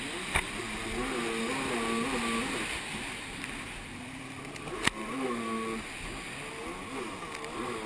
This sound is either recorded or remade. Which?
recorded